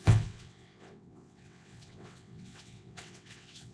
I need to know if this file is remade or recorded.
remade